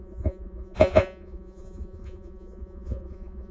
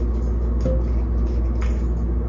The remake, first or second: first